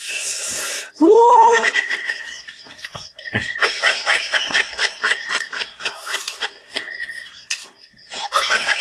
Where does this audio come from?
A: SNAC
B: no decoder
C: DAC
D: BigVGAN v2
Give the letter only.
A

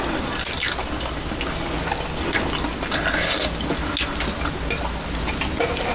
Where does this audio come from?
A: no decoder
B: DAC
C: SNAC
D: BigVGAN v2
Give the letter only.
A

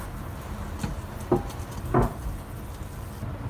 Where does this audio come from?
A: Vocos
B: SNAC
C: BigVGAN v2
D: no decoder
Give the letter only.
D